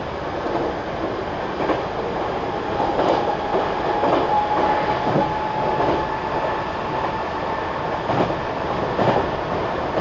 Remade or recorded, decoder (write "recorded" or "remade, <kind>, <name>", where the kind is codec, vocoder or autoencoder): recorded